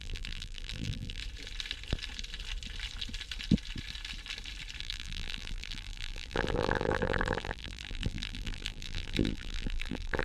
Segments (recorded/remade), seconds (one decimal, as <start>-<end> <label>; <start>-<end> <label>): 0.0-1.2 remade; 1.2-4.8 recorded; 4.8-10.2 remade